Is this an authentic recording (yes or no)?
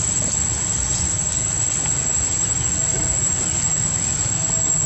yes